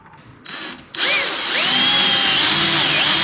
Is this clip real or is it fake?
real